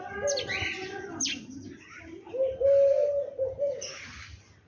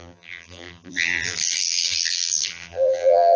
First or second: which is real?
first